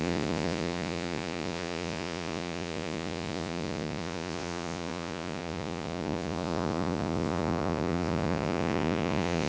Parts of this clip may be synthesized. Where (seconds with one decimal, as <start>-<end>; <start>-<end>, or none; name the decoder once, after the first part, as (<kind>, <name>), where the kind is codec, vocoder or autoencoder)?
0.0-9.5 (vocoder, Vocos)